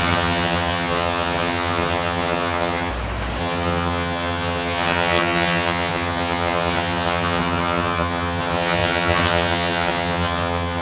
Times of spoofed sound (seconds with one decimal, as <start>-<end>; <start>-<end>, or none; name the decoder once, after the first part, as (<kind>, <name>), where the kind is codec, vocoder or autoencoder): 0.0-2.9 (vocoder, HiFi-GAN); 3.4-10.8

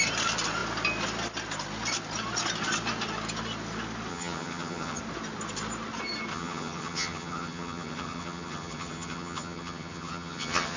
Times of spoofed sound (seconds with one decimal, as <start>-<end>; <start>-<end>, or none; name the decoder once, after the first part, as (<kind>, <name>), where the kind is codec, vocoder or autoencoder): 4.1-5.0 (vocoder, HiFi-GAN); 6.3-10.8

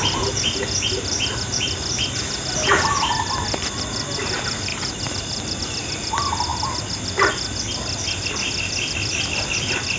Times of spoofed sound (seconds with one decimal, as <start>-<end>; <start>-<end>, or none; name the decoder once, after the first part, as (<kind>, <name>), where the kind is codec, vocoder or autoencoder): none

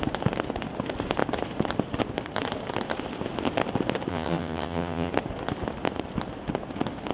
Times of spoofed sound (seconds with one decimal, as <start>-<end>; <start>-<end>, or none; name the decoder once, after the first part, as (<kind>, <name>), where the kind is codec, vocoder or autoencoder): 4.1-5.1 (vocoder, HiFi-GAN)

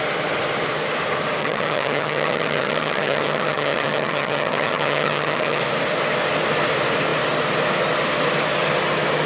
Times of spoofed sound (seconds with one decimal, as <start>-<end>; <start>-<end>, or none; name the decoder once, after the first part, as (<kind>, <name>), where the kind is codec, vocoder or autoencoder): 1.4-5.6 (vocoder, HiFi-GAN)